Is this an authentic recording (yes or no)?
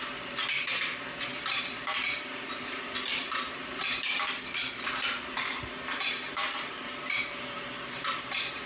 no